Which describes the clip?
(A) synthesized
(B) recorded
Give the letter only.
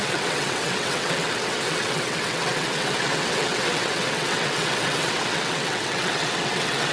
A